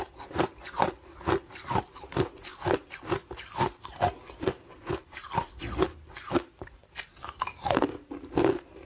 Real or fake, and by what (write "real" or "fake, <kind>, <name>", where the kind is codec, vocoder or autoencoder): real